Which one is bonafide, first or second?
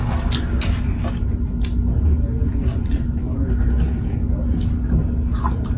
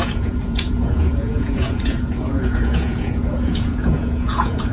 first